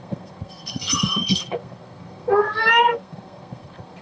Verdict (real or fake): fake